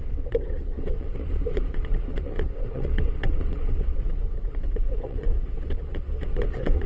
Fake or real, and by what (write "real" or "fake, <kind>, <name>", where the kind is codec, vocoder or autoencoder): fake, vocoder, WaveNeXt